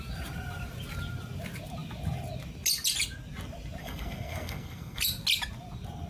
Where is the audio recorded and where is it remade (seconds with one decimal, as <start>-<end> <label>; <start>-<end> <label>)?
0.0-3.8 recorded; 3.8-5.0 remade; 5.0-6.1 recorded